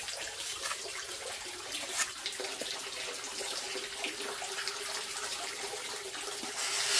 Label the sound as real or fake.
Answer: real